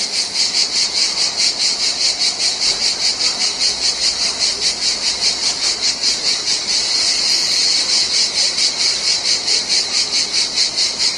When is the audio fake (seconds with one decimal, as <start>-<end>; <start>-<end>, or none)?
none